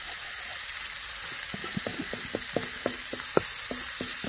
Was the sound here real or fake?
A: real